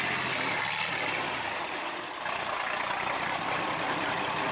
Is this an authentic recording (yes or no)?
no